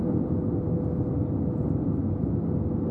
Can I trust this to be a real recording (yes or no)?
yes